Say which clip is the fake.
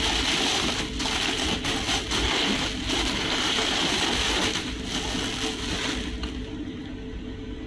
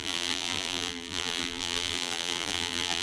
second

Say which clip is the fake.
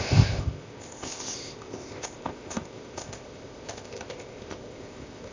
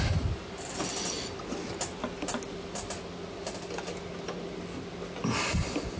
first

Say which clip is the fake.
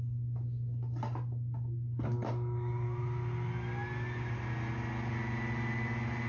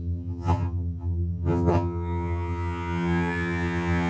second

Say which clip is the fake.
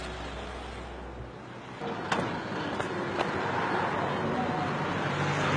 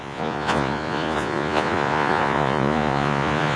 second